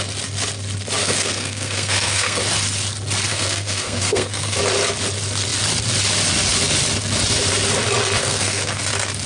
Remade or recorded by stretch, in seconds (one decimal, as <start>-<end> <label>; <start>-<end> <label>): 0.0-1.0 recorded; 1.0-2.4 remade; 2.4-3.3 recorded; 3.3-4.6 remade; 4.6-8.2 recorded; 8.2-8.8 remade; 8.8-9.3 recorded